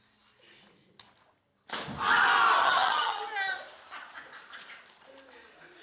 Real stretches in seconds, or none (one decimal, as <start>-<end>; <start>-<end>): 0.0-2.6; 3.2-5.8